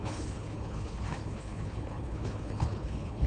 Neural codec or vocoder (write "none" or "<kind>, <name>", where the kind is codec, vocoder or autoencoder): codec, HILCodec